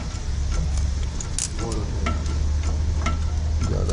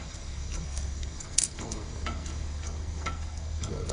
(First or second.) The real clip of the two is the first